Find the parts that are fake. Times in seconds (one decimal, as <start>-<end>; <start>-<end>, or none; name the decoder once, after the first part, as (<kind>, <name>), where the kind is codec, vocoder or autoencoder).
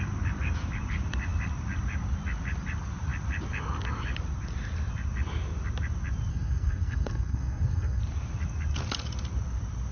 6.3-8.0 (codec, SNAC)